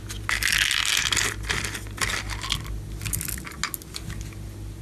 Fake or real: real